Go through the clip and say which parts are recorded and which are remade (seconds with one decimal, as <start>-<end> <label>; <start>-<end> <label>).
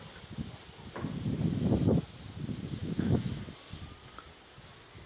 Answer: 0.0-2.8 recorded; 2.8-3.3 remade; 3.3-5.1 recorded